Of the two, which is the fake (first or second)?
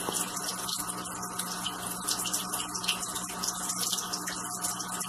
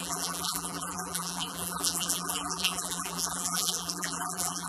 second